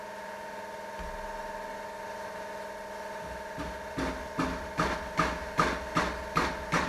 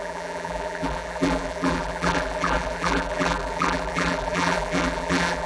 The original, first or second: first